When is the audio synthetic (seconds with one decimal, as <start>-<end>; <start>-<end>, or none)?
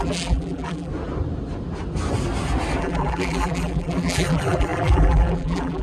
0.0-0.9; 2.8-5.8